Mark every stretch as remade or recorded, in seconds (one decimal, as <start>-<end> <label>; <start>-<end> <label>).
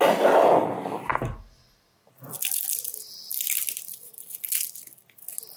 0.0-5.6 recorded